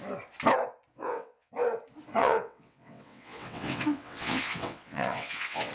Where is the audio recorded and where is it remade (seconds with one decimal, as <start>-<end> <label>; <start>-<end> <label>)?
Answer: 0.0-0.9 recorded; 0.9-1.5 remade; 1.5-2.2 recorded; 2.2-5.7 remade